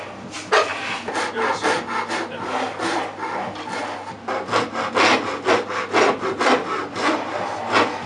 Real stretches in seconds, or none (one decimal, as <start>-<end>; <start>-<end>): 0.0-8.1